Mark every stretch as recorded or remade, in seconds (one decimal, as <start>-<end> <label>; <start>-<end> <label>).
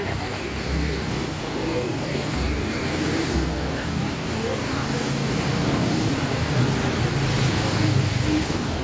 0.0-6.6 remade; 6.6-7.5 recorded; 7.5-8.8 remade